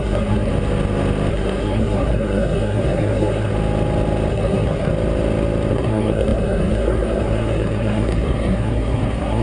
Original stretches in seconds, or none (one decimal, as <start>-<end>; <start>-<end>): 0.5-1.3; 3.5-4.3; 4.9-5.7